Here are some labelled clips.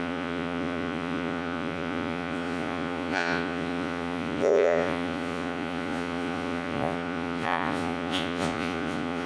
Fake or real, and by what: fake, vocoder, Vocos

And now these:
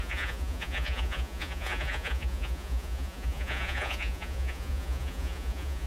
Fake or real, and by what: fake, vocoder, Vocos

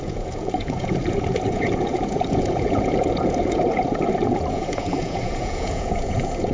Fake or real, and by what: fake, vocoder, Vocos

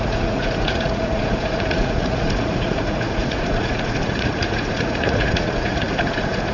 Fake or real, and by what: fake, vocoder, Vocos